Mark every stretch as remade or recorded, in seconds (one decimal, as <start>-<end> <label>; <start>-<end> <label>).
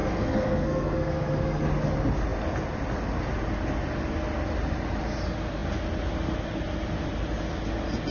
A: 0.0-1.7 remade; 1.7-8.1 recorded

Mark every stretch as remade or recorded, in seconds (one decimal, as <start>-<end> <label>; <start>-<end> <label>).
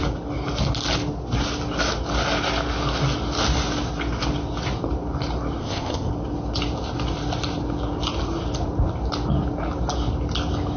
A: 0.0-5.6 recorded; 5.6-6.1 remade; 6.1-10.8 recorded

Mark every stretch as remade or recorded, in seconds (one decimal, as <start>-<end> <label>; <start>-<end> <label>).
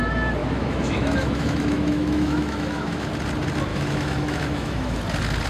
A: 0.0-0.4 recorded; 0.4-3.1 remade; 3.1-3.7 recorded; 3.7-5.0 remade; 5.0-5.5 recorded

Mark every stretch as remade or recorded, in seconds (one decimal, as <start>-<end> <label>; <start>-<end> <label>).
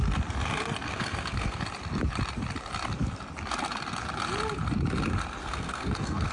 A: 0.0-0.9 recorded; 0.9-1.6 remade; 1.6-5.4 recorded; 5.4-6.3 remade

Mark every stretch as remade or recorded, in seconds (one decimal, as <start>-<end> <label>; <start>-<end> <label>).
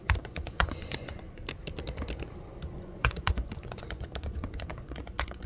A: 0.0-1.4 remade; 1.4-2.8 recorded; 2.8-5.5 remade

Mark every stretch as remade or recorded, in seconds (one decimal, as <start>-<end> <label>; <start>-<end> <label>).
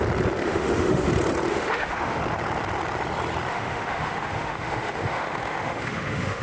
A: 0.0-0.4 recorded; 0.4-1.1 remade; 1.1-1.5 recorded; 1.5-2.2 remade; 2.2-3.5 recorded; 3.5-6.4 remade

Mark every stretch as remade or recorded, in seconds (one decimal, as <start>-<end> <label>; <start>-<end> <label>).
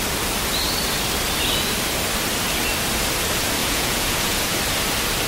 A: 0.0-3.6 recorded; 3.6-4.6 remade; 4.6-5.3 recorded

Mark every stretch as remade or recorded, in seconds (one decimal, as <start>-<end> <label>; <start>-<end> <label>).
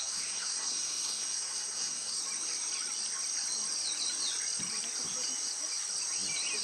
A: 0.0-2.2 remade; 2.2-6.6 recorded